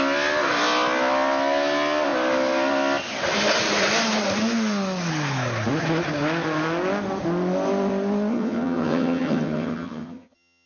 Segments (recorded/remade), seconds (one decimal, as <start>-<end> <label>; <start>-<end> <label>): 0.0-8.3 recorded; 8.3-10.7 remade